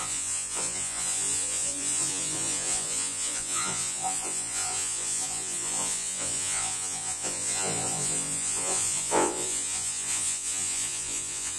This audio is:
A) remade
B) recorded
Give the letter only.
A